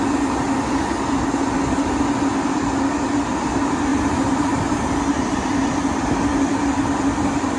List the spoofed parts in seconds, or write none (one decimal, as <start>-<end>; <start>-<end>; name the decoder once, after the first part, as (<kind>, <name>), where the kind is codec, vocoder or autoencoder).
3.9-5.7 (vocoder, BigVGAN v2)